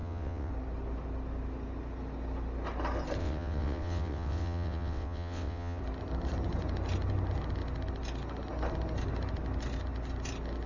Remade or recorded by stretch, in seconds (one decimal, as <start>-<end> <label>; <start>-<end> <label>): 0.0-0.5 remade; 0.5-3.2 recorded; 3.2-5.8 remade; 5.8-10.7 recorded